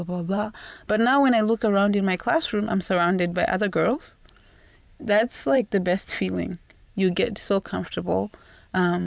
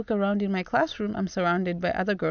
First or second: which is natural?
second